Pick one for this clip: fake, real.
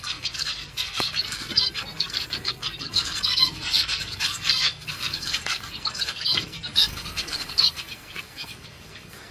fake